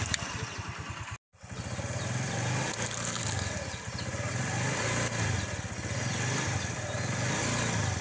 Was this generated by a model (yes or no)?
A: no